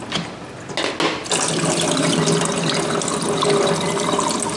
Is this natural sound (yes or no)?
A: yes